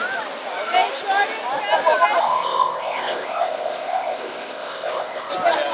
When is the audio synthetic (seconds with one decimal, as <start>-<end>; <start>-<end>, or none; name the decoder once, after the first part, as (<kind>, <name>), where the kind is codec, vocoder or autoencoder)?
2.2-5.3 (codec, ZipCodec)